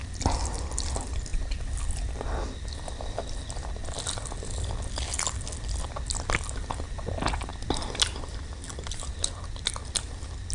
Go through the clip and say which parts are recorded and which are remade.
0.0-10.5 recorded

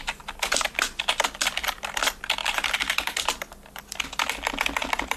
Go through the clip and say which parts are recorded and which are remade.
0.0-2.4 recorded; 2.4-4.0 remade; 4.0-5.2 recorded